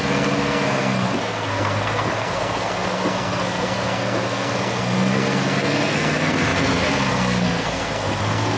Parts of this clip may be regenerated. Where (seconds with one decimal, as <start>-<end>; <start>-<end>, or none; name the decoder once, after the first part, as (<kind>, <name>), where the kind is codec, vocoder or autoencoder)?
0.0-8.6 (codec, SNAC)